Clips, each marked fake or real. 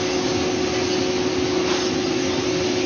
real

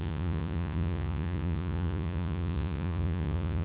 fake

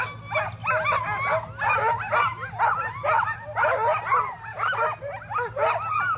real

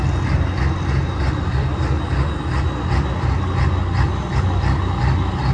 real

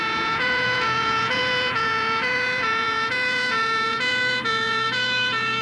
fake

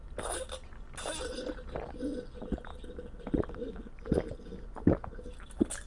real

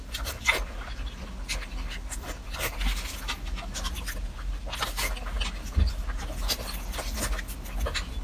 real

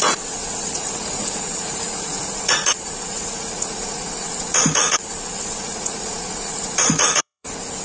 fake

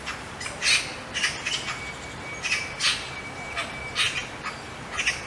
real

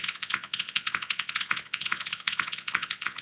fake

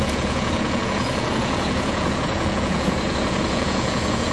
fake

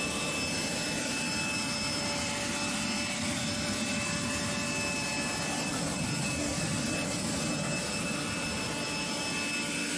real